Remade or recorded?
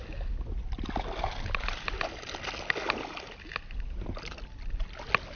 recorded